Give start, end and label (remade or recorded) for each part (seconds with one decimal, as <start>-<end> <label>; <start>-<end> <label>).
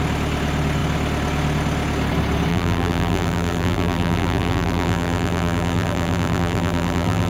0.0-2.5 recorded; 2.5-7.3 remade